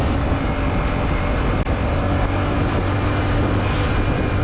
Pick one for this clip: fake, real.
real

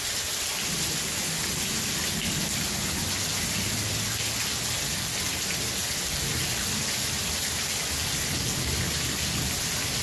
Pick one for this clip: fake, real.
real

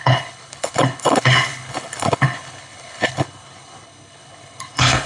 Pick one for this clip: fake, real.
fake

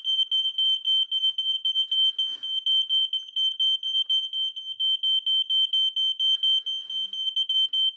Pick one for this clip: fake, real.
real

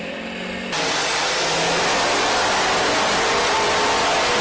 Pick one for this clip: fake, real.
real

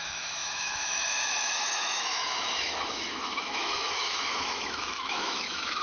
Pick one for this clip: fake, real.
fake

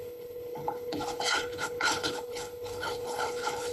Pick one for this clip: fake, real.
fake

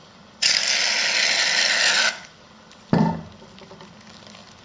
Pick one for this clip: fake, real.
fake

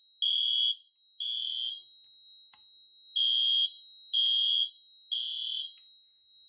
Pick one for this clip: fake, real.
real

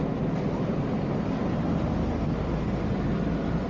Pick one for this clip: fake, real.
real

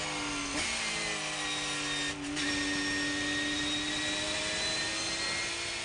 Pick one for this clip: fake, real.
real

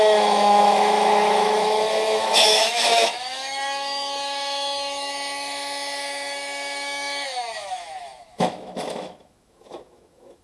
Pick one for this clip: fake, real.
fake